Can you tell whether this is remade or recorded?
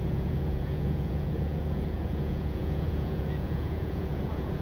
remade